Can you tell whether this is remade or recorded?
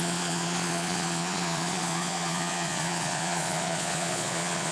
remade